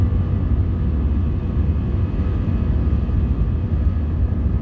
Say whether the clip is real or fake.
fake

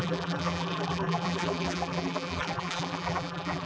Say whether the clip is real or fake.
fake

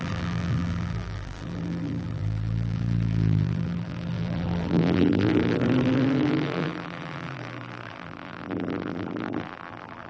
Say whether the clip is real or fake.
fake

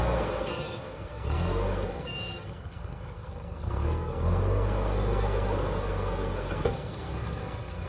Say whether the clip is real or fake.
fake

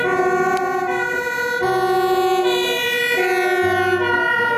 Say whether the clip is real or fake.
real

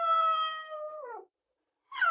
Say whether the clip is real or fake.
fake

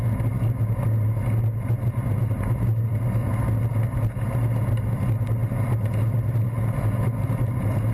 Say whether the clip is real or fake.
real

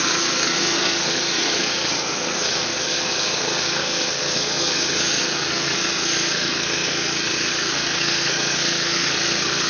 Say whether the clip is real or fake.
fake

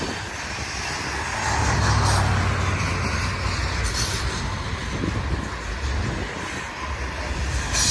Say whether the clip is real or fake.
real